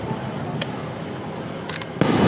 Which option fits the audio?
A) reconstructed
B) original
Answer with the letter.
B